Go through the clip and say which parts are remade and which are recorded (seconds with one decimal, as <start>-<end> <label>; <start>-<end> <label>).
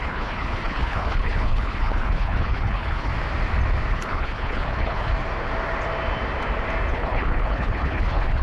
0.0-3.1 remade; 3.1-3.9 recorded; 3.9-5.1 remade; 5.1-6.9 recorded; 6.9-8.4 remade